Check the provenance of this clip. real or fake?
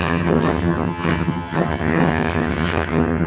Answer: fake